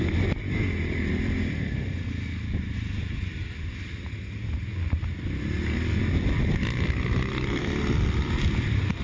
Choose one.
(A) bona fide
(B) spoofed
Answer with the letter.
A